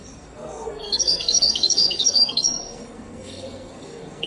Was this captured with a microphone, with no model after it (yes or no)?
no